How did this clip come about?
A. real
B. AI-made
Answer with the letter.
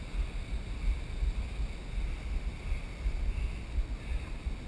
A